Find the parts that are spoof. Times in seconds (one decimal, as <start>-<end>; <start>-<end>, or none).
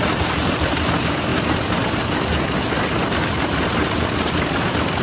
0.0-1.3; 4.3-5.0